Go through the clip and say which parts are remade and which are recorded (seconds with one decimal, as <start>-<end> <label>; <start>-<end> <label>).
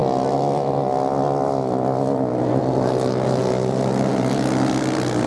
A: 0.0-5.3 recorded